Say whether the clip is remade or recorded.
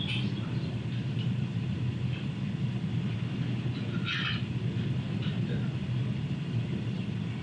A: recorded